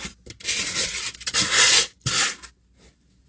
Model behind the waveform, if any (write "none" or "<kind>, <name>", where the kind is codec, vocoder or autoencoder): none